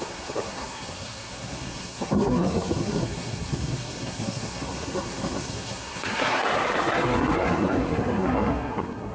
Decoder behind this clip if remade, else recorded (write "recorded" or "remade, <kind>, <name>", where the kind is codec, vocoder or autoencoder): remade, codec, SNAC